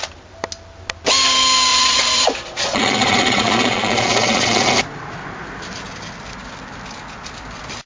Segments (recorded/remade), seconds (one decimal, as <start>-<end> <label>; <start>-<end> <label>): 0.0-1.7 recorded; 1.7-4.7 remade; 4.7-7.9 recorded